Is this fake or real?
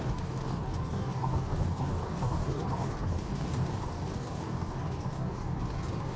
fake